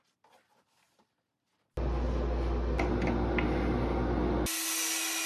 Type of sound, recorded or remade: recorded